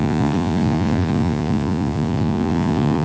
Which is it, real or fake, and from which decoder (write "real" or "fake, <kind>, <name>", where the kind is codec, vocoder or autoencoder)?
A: fake, vocoder, Vocos